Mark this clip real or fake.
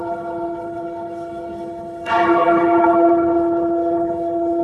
fake